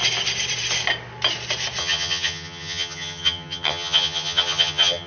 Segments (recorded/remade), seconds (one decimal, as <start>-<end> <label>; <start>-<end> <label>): 0.0-1.8 recorded; 1.8-5.1 remade